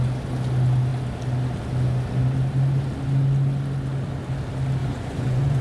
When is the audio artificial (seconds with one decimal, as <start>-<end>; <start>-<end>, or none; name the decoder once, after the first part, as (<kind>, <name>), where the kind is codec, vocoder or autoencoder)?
4.8-5.6 (vocoder, Vocos)